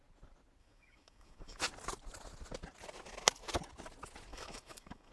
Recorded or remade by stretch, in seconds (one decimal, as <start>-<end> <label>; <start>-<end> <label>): 0.0-0.6 recorded; 0.6-1.6 remade; 1.6-4.3 recorded; 4.3-5.1 remade